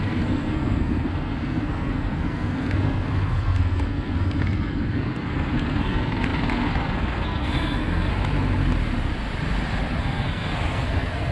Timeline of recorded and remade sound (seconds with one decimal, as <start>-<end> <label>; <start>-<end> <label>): 0.0-8.1 remade; 8.1-10.0 recorded; 10.0-11.3 remade